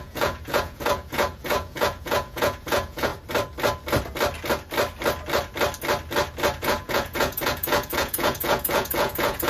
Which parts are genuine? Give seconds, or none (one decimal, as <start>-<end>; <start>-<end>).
3.1-6.6